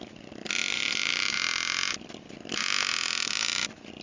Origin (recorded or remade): recorded